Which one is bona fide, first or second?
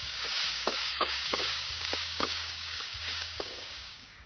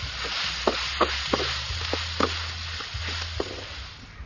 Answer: second